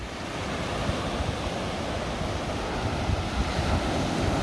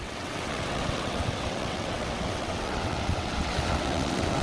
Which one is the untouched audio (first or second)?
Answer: first